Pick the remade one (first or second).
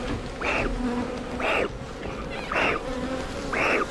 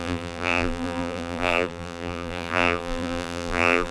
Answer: second